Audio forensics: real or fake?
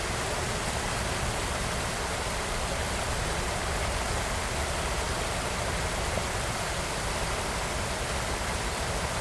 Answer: real